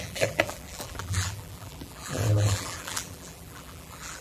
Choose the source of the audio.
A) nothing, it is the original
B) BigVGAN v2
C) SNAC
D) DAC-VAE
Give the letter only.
B